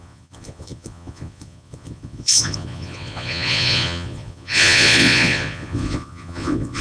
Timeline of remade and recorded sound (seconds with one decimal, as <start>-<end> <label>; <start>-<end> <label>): 0.0-6.8 remade